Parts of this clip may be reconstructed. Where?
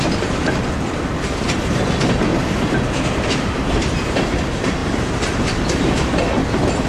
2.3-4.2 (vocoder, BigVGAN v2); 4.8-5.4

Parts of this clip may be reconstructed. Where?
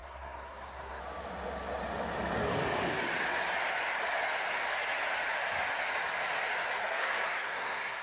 0.0-1.0 (codec, SNAC); 6.8-8.0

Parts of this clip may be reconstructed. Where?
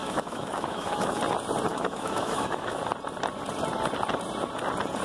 0.0-1.2 (autoencoder, DAC-VAE); 1.7-2.8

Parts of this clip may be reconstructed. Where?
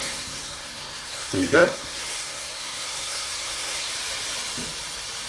0.0-3.9 (codec, SNAC)